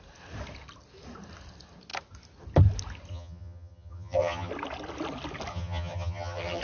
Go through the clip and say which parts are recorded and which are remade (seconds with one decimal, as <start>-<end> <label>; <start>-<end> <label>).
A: 0.0-3.1 recorded; 3.1-4.5 remade; 4.5-5.5 recorded; 5.5-6.6 remade